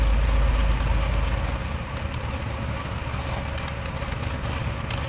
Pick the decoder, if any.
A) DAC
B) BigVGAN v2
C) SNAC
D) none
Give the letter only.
D